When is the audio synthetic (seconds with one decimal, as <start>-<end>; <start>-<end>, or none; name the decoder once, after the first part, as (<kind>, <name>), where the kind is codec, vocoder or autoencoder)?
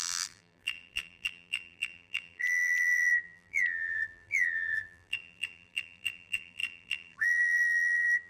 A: 0.0-8.3 (vocoder, BigVGAN v2)